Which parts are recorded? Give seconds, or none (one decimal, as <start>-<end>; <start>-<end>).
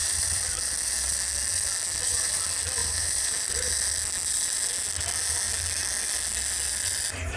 0.9-2.8; 3.7-7.4